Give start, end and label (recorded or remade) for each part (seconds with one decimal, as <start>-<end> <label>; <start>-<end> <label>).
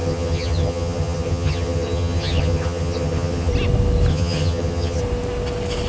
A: 0.0-3.5 remade; 3.5-4.1 recorded; 4.1-5.0 remade; 5.0-5.9 recorded